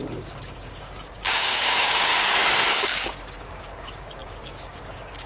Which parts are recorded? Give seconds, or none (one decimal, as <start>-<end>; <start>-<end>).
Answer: 2.1-2.7